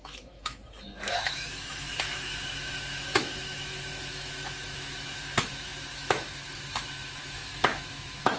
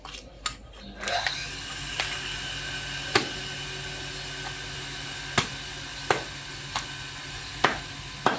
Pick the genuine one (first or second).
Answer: second